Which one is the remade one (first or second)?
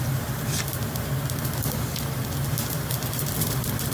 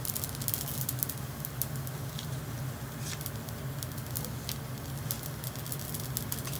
first